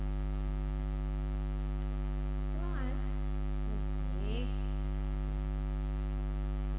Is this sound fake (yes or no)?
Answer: no